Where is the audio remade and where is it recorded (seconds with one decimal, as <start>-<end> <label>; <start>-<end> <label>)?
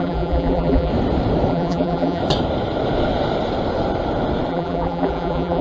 0.0-0.9 remade; 0.9-1.5 recorded; 1.5-2.2 remade; 2.2-4.5 recorded; 4.5-5.6 remade